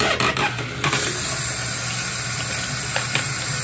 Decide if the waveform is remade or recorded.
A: recorded